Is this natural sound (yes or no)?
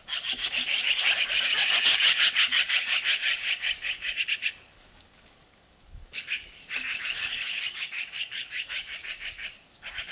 no